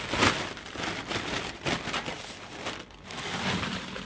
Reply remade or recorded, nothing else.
recorded